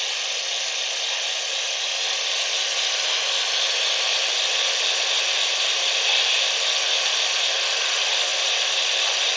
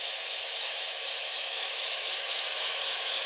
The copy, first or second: second